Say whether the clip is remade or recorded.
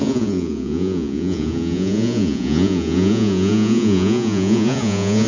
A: remade